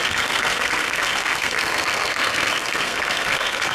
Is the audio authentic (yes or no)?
no